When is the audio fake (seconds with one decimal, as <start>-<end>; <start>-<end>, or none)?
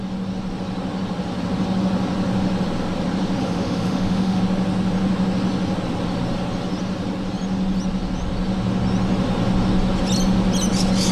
3.4-4.4